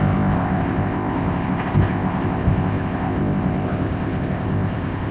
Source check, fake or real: fake